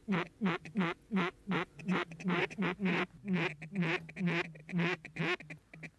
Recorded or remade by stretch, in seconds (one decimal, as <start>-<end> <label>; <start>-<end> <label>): 0.0-3.0 remade; 3.0-4.6 recorded; 4.6-5.2 remade; 5.2-6.0 recorded